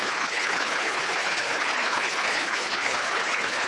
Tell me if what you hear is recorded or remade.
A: remade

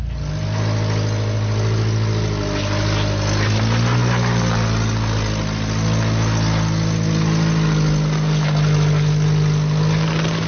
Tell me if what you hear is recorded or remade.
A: recorded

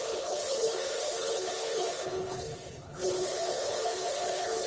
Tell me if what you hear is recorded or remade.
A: remade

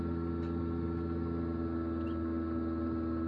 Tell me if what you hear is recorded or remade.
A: recorded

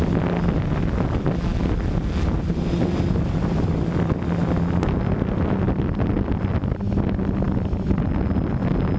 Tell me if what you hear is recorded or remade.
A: recorded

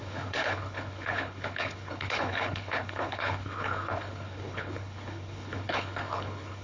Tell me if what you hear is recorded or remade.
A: remade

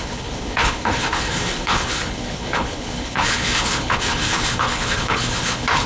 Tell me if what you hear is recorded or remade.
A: remade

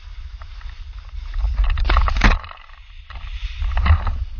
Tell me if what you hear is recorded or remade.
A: recorded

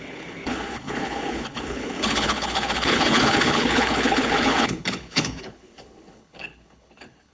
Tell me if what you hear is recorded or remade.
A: remade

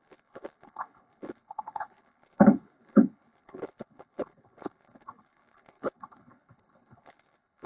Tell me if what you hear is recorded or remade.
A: remade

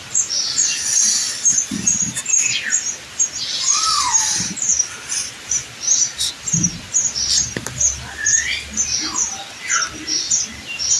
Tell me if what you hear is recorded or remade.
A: recorded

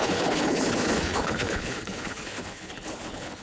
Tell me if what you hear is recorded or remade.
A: remade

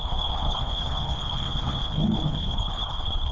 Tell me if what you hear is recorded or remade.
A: remade